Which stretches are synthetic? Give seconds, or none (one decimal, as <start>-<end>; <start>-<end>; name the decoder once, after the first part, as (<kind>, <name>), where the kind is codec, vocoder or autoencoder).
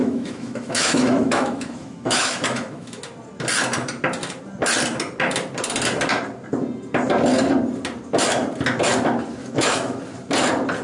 0.0-3.0 (autoencoder, DAC-VAE); 9.4-10.0